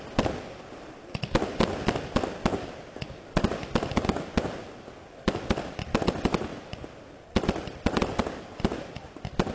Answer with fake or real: real